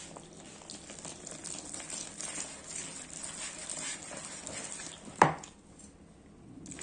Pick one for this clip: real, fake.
real